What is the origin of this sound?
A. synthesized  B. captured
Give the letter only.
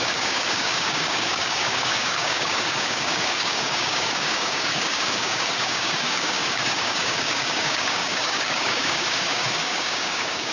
A